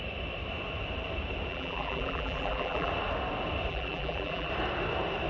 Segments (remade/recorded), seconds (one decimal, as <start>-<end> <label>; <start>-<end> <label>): 0.0-1.5 recorded; 1.5-2.9 remade; 2.9-3.7 recorded; 3.7-4.5 remade; 4.5-5.3 recorded